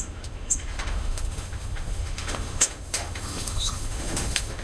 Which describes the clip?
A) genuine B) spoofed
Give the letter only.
B